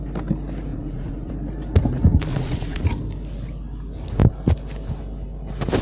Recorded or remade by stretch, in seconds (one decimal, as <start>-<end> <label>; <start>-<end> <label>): 0.0-0.7 recorded; 0.7-1.3 remade; 1.3-2.3 recorded; 2.3-2.9 remade; 2.9-5.8 recorded